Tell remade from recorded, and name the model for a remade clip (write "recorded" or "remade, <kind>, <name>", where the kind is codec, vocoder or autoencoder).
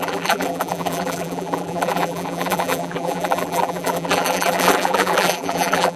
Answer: remade, vocoder, BigVGAN v2